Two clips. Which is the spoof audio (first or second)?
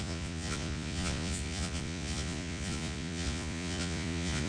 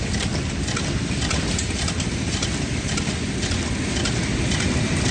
first